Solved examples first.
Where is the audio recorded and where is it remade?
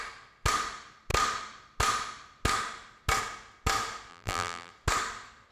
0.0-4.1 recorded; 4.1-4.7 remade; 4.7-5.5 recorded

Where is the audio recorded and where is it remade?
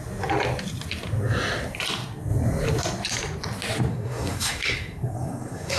0.0-3.9 recorded; 3.9-5.8 remade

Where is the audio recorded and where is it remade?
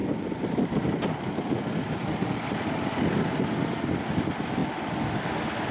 0.0-5.7 recorded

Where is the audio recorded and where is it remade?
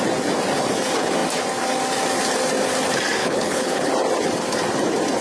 0.0-3.2 recorded; 3.2-3.9 remade; 3.9-5.2 recorded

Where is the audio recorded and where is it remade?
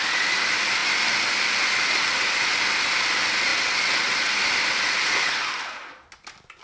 0.0-6.6 recorded